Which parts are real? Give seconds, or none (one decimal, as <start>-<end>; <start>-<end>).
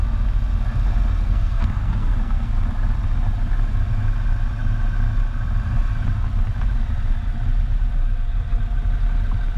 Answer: 0.0-1.2; 2.5-9.6